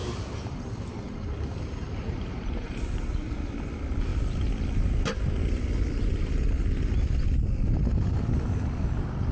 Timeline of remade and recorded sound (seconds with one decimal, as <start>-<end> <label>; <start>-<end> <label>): 0.0-3.5 remade; 3.5-9.3 recorded